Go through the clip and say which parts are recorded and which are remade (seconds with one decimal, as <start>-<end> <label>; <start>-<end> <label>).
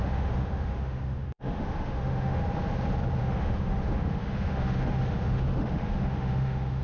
0.0-2.4 remade; 2.4-3.2 recorded; 3.2-6.8 remade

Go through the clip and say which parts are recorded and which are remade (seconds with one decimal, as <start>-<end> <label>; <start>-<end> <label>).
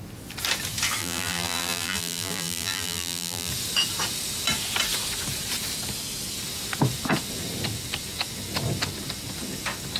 0.0-1.0 recorded; 1.0-3.5 remade; 3.5-10.0 recorded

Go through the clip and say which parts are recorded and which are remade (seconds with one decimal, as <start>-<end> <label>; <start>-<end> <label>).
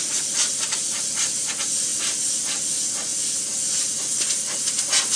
0.0-5.2 recorded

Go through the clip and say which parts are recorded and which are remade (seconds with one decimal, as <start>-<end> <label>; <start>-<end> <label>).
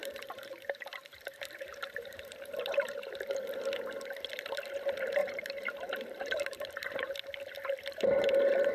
0.0-3.1 remade; 3.1-5.2 recorded; 5.2-7.1 remade; 7.1-8.7 recorded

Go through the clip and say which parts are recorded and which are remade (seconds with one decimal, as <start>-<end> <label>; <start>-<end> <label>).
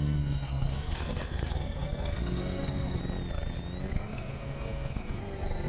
0.0-3.0 remade; 3.0-3.9 recorded; 3.9-5.7 remade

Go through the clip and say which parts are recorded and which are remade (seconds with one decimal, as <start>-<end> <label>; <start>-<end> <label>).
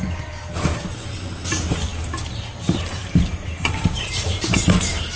0.0-1.9 recorded; 1.9-5.2 remade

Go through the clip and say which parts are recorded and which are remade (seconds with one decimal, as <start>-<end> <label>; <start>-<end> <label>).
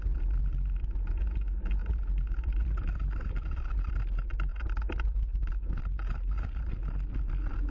0.0-1.8 recorded; 1.8-3.7 remade; 3.7-4.5 recorded; 4.5-6.7 remade; 6.7-7.7 recorded